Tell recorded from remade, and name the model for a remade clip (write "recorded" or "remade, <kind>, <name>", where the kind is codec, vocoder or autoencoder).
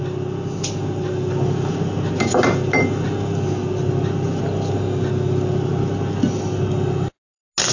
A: recorded